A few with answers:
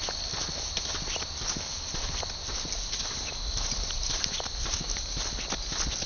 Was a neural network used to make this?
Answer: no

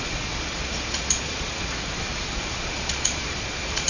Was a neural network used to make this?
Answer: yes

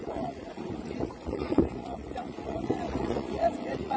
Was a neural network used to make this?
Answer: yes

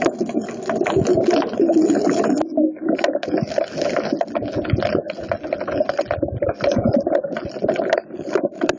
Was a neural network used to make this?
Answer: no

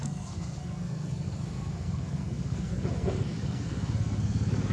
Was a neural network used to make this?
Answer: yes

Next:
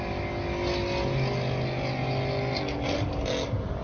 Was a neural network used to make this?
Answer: no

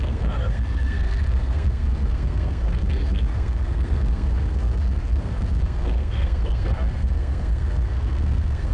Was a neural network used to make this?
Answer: yes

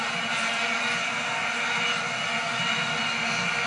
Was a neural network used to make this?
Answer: no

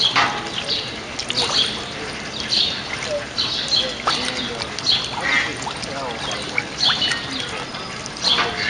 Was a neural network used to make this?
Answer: no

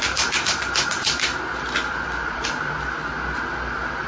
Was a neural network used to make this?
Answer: no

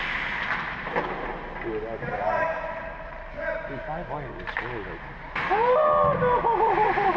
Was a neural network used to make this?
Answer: no